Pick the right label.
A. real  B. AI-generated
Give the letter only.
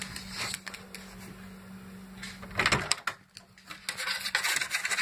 A